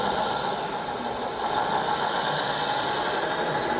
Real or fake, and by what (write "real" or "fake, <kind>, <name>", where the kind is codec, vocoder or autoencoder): real